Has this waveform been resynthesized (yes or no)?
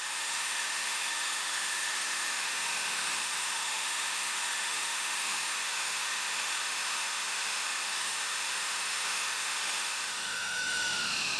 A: yes